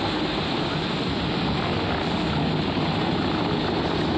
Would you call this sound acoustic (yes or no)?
yes